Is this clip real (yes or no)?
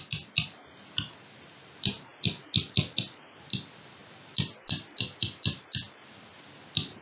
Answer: yes